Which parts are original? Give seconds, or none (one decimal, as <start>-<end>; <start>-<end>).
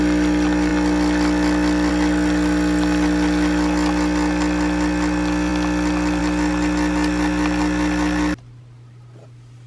0.0-9.7